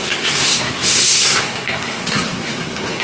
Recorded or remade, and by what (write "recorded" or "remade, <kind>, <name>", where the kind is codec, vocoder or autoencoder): remade, codec, SNAC